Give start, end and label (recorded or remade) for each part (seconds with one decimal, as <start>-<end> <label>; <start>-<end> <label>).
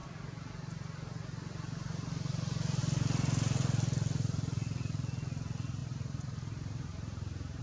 0.0-5.8 recorded; 5.8-7.6 remade